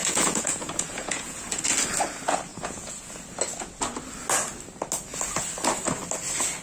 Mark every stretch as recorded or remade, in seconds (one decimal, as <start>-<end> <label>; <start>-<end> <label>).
0.0-1.6 remade; 1.6-2.5 recorded; 2.5-3.1 remade; 3.1-6.6 recorded